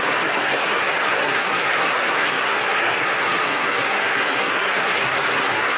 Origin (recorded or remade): remade